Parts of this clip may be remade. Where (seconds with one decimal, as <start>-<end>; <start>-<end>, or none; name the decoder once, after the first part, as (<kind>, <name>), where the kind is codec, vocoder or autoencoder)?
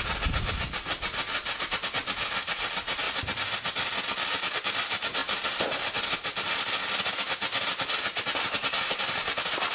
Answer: none